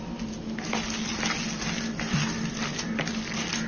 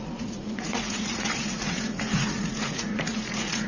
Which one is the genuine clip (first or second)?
first